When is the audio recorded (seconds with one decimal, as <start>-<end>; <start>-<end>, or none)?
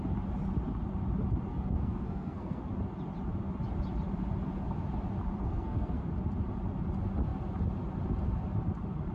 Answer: 0.0-1.5; 2.7-5.4; 6.1-9.1